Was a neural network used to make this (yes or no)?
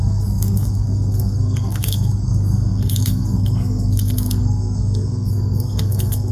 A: yes